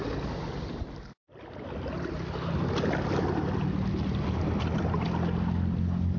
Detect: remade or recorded recorded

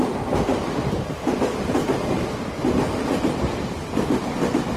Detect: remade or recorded recorded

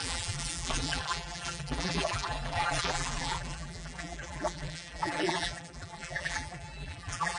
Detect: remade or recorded remade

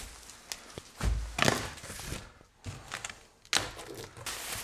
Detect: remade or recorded recorded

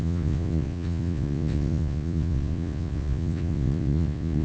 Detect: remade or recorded remade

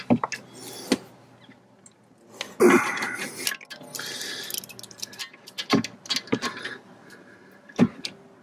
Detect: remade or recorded recorded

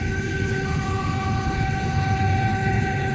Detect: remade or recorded remade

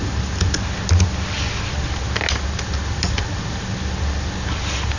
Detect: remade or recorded recorded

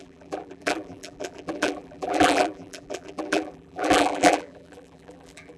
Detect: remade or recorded remade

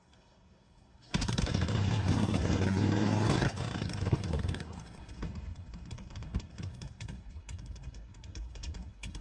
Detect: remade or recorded remade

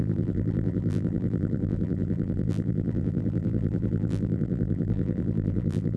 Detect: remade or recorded remade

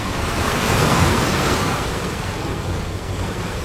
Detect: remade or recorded remade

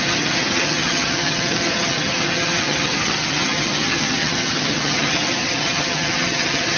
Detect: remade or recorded remade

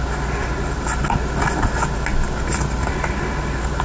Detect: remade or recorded recorded